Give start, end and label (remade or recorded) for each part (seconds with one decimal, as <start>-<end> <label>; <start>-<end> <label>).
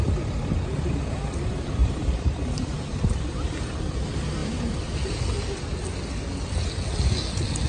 0.0-1.8 recorded; 1.8-3.8 remade; 3.8-4.4 recorded; 4.4-5.2 remade; 5.2-7.7 recorded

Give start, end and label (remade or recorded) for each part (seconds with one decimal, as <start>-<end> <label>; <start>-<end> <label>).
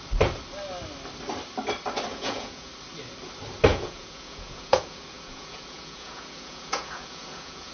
0.0-2.1 recorded; 2.1-2.7 remade; 2.7-3.7 recorded; 3.7-7.7 remade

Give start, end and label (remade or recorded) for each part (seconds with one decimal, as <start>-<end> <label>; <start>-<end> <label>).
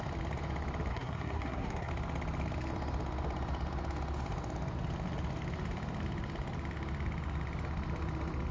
0.0-0.9 recorded; 0.9-1.9 remade; 1.9-8.5 recorded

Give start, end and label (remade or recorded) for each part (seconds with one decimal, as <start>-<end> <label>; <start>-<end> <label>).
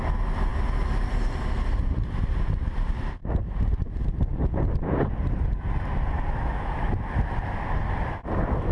0.0-3.2 recorded; 3.2-5.7 remade; 5.7-8.7 recorded